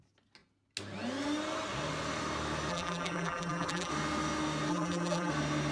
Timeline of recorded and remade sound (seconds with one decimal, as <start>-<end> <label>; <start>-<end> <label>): 0.0-2.7 recorded; 2.7-3.9 remade; 3.9-4.7 recorded; 4.7-5.3 remade; 5.3-5.7 recorded